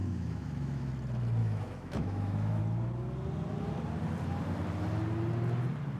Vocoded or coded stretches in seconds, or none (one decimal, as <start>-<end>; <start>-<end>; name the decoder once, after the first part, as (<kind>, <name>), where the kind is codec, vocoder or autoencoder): 0.0-0.9 (autoencoder, DAC-VAE); 1.4-2.6